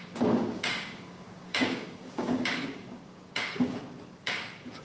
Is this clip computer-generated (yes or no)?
yes